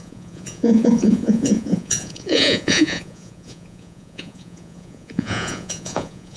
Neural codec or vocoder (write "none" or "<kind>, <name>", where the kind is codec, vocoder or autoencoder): vocoder, Vocos